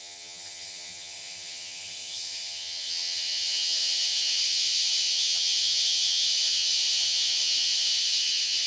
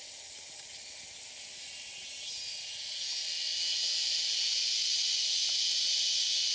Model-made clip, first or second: first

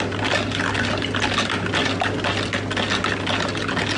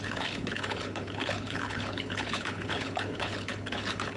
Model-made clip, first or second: second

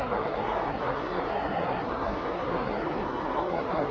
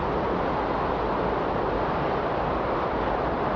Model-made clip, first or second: first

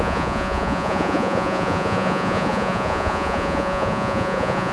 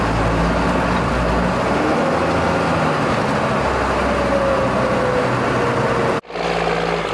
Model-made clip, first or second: first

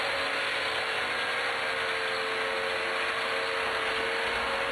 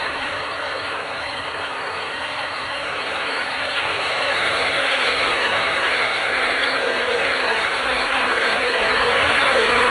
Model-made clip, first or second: second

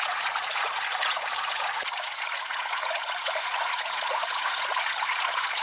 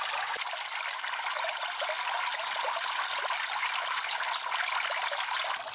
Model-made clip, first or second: first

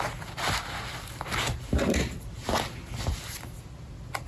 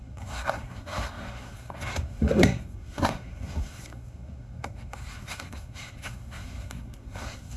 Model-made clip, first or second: second